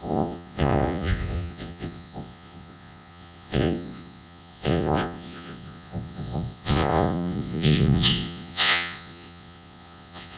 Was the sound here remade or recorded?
remade